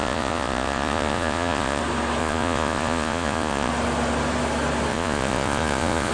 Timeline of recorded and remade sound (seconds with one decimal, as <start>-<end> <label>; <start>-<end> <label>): 0.0-1.8 remade; 1.8-2.2 recorded; 2.2-3.7 remade; 3.7-4.9 recorded; 4.9-6.1 remade